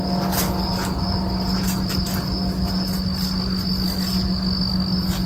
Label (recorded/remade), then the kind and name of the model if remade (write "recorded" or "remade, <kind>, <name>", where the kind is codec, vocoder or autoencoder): recorded